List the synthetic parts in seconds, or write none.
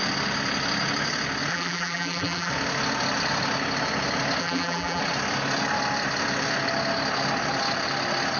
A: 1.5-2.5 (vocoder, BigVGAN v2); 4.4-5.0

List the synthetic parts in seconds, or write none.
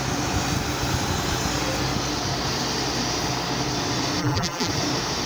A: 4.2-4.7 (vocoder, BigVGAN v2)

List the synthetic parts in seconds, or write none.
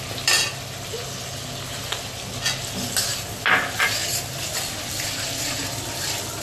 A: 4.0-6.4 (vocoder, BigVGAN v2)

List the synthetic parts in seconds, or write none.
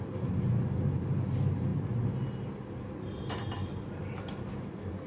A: 0.0-1.7 (vocoder, BigVGAN v2)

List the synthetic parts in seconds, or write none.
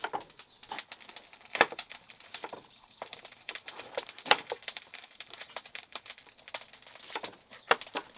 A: 1.3-6.1 (vocoder, BigVGAN v2)